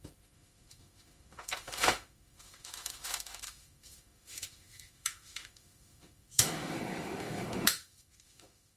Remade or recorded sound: remade